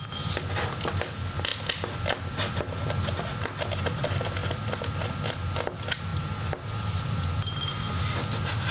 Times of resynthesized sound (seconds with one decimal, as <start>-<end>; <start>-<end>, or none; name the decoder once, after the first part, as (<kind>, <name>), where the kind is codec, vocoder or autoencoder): none